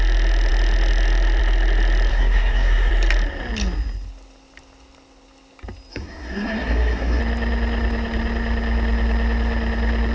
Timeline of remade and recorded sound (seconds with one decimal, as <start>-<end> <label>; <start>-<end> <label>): 0.0-2.1 recorded; 2.1-2.9 remade; 2.9-5.9 recorded; 5.9-7.2 remade; 7.2-10.1 recorded